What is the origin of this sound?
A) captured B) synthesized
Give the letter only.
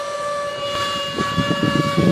B